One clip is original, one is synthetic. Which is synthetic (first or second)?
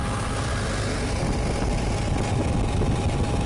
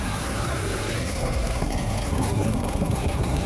second